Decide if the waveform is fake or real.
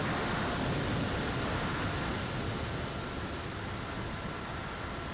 real